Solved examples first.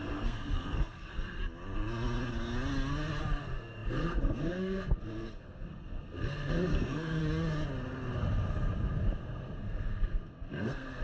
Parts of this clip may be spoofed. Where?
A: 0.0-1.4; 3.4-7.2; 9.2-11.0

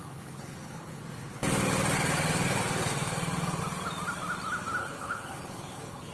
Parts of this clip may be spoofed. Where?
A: 0.0-1.0; 4.8-6.1